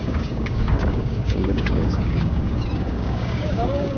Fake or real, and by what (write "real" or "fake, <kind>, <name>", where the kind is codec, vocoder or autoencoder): fake, codec, DAC